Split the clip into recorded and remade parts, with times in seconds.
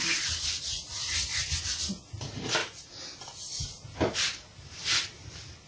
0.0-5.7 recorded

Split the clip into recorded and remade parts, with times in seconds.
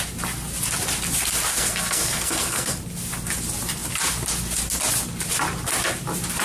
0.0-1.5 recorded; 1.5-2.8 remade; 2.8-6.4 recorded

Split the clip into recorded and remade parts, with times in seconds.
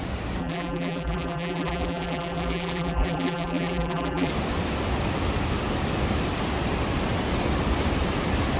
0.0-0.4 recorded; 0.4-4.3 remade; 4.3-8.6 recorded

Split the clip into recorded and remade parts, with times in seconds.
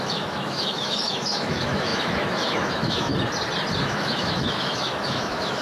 0.0-3.1 remade; 3.1-3.8 recorded; 3.8-5.6 remade